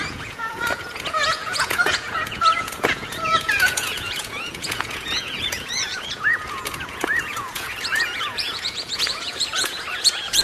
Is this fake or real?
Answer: fake